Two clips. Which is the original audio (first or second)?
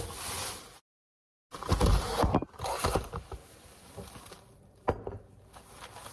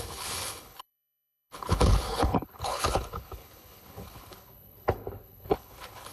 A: first